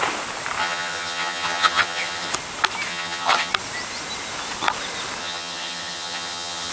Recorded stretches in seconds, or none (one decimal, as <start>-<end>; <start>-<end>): 0.0-0.6; 2.3-2.9; 3.5-5.2